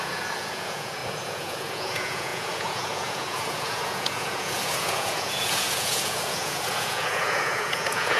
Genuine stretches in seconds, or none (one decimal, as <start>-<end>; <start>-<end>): none